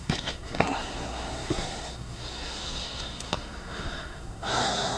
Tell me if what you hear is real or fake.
fake